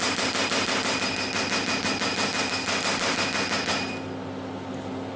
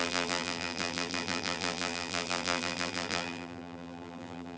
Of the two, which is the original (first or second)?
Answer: first